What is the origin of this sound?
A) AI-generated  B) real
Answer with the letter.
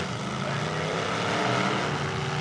B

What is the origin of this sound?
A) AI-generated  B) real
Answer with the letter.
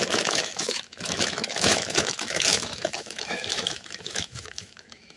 A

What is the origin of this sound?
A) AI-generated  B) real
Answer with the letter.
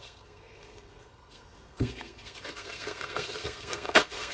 A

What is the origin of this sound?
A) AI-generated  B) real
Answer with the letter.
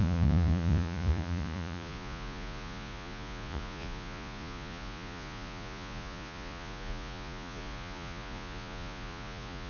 A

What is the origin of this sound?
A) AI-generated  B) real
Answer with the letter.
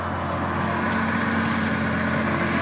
B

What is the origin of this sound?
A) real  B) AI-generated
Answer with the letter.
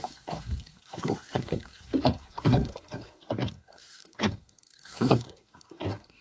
B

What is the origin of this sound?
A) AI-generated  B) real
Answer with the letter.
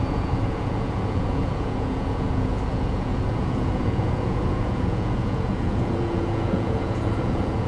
A